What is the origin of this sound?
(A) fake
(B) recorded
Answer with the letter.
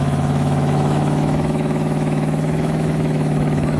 A